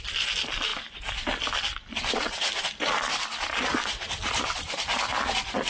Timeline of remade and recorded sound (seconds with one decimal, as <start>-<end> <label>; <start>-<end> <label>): 0.0-5.7 recorded